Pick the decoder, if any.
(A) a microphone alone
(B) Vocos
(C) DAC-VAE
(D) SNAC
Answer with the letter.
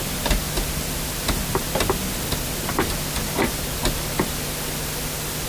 A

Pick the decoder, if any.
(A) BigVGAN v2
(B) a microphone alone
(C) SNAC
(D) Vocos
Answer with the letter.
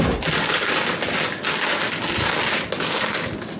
B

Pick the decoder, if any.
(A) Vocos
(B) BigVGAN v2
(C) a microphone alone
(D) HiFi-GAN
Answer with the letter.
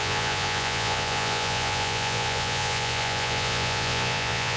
A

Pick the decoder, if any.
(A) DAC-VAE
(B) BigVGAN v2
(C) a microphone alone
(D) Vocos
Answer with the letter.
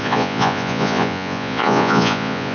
D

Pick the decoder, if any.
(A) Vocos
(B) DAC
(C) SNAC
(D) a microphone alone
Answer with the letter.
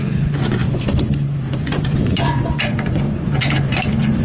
A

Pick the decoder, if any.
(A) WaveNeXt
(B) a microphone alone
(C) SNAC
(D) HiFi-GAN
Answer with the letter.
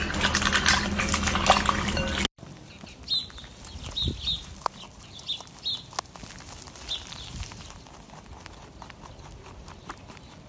B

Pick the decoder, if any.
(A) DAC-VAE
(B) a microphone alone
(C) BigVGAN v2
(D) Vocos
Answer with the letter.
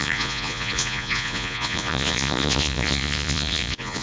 D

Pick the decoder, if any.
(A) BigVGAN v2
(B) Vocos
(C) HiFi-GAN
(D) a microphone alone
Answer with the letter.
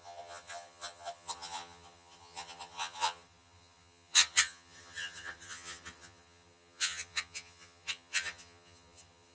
C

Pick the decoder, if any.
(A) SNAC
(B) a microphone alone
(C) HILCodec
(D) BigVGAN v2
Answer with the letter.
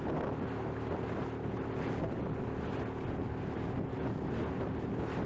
B